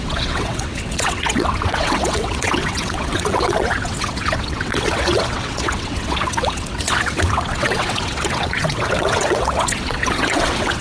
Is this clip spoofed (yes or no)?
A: yes